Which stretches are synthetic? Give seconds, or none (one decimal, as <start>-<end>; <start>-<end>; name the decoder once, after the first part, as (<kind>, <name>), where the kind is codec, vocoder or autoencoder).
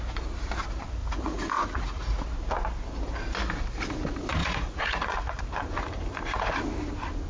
1.0-2.2 (vocoder, Vocos); 4.4-5.4